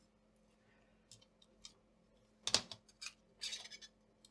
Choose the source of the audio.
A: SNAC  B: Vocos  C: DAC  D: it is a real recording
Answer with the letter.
D